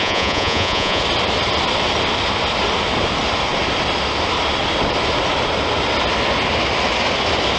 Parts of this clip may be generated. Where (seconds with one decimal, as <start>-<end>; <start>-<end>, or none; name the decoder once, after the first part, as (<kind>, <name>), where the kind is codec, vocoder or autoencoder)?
0.0-1.0 (vocoder, Vocos)